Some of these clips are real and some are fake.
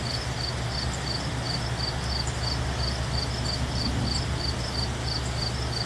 real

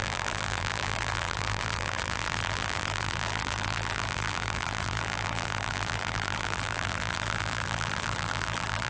fake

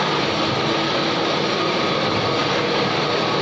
real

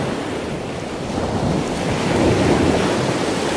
real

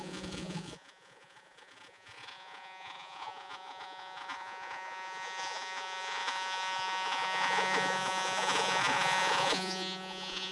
fake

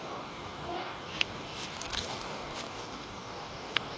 fake